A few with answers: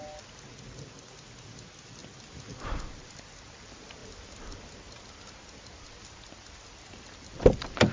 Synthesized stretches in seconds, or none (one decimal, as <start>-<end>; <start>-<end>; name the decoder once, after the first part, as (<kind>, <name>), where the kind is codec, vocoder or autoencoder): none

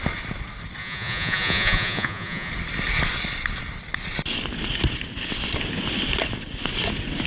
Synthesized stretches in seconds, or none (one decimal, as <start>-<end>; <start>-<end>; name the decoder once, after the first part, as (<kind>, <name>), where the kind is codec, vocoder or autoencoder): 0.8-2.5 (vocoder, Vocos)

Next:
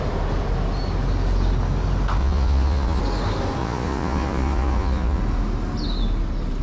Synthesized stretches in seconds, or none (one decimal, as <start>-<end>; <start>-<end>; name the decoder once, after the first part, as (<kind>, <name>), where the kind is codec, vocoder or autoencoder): 2.2-3.0 (vocoder, Vocos); 3.6-5.2

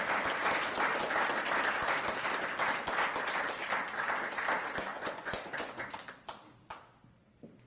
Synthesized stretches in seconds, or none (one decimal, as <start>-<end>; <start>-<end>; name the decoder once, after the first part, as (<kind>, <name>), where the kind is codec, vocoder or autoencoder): 4.9-5.9 (vocoder, Vocos)